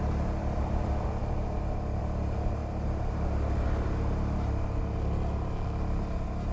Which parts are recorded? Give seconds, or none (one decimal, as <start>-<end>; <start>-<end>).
0.0-6.5

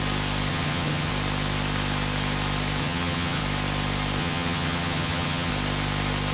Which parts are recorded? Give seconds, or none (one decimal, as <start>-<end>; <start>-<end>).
0.0-0.5; 1.1-2.8; 3.4-4.2; 5.5-6.3

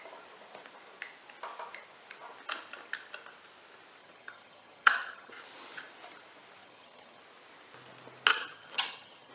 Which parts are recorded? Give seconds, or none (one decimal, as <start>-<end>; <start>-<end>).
0.0-4.0; 5.3-6.6; 7.2-8.3